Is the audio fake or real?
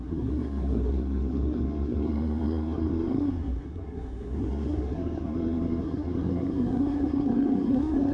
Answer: fake